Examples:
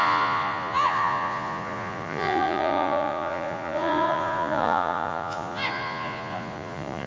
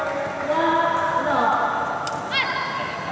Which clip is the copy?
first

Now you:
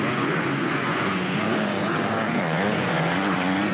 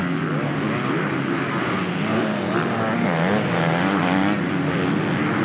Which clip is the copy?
first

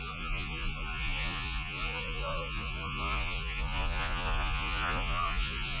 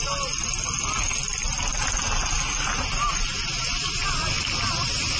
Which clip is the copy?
first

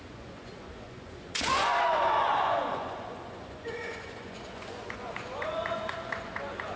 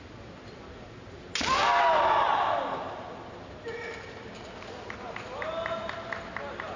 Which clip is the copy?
first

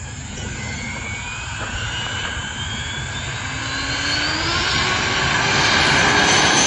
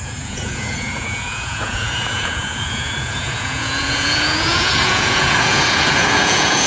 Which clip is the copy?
second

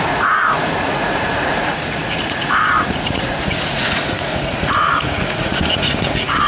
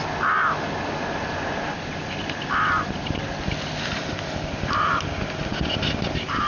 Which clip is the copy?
first